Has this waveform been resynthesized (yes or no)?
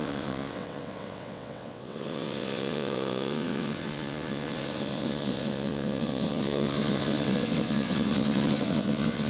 yes